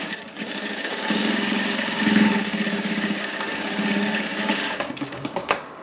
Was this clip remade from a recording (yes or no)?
yes